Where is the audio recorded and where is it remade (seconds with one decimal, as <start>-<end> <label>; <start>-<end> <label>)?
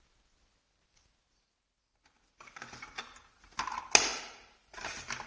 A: 0.0-5.3 recorded